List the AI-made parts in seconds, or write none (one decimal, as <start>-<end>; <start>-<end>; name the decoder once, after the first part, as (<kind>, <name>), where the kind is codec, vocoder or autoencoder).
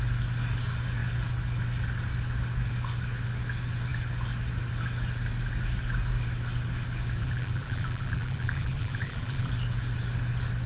7.2-9.5 (vocoder, BigVGAN v2)